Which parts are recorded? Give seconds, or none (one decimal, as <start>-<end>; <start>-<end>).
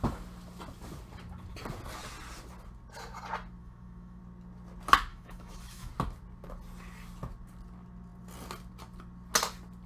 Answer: 0.0-3.6; 4.2-5.1; 5.9-9.9